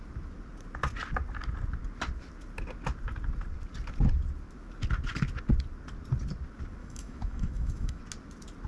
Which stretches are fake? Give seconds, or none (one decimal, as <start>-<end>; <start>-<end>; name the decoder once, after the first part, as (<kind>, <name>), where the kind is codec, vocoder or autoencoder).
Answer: 6.8-8.0 (autoencoder, DAC-VAE)